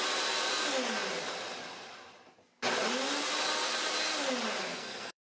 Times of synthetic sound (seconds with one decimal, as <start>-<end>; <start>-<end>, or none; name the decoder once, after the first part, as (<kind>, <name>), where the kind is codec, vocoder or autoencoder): 4.7-5.2 (codec, SNAC)